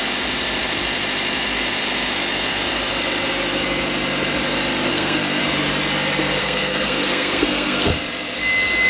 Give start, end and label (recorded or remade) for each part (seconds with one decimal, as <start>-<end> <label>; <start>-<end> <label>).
0.0-4.9 recorded; 4.9-5.4 remade; 5.4-6.4 recorded; 6.4-7.9 remade; 7.9-8.9 recorded